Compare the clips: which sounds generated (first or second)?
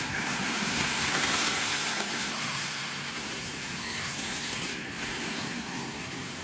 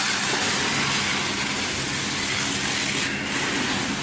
first